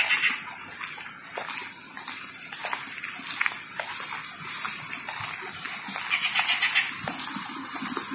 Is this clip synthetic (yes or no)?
no